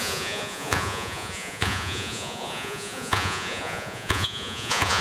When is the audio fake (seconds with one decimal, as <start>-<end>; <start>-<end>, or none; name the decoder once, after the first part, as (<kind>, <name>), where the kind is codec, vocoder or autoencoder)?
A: 0.0-5.0 (vocoder, Vocos)